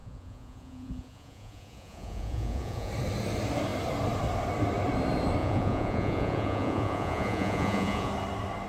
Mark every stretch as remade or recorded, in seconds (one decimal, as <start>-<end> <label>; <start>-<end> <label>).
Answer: 0.0-2.9 remade; 2.9-5.4 recorded; 5.4-8.1 remade; 8.1-8.7 recorded